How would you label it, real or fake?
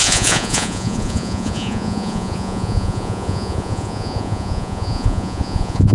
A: fake